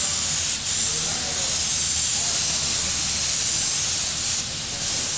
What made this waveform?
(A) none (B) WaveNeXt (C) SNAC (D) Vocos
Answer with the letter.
A